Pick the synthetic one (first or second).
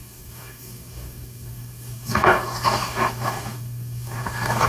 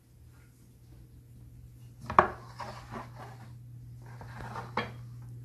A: first